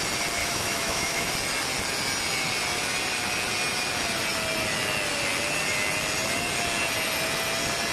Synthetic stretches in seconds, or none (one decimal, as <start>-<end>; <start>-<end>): 0.4-1.3

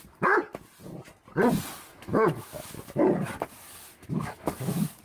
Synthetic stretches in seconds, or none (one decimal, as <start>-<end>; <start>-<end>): 1.9-3.0; 3.9-5.0

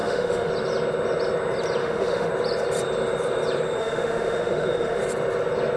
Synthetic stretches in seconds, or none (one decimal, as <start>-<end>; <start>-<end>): 0.0-0.5; 1.8-2.3; 3.8-5.0

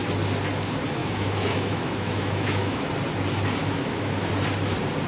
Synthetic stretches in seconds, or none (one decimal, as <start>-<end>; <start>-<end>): 1.0-2.9; 3.6-4.3

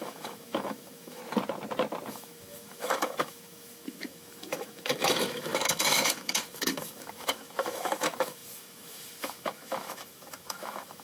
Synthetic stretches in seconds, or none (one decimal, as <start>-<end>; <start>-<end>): 0.0-1.2; 2.1-11.0

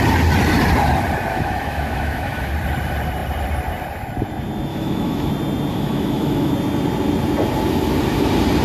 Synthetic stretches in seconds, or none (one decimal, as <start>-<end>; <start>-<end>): 1.3-2.5; 4.7-5.3; 5.7-6.5

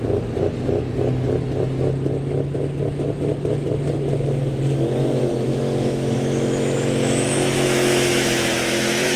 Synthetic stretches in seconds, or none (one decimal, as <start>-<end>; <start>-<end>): 5.5-9.2